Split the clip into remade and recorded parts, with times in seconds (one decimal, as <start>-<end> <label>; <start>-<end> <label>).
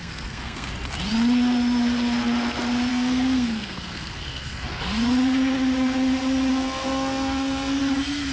0.0-0.7 remade; 0.7-2.9 recorded; 2.9-4.8 remade; 4.8-6.5 recorded; 6.5-7.8 remade; 7.8-8.3 recorded